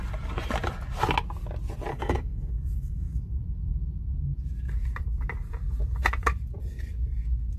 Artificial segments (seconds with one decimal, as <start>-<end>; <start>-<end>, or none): 1.9-3.2